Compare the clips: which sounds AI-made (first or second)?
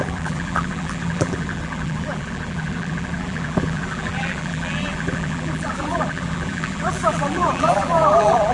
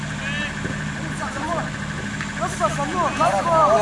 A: first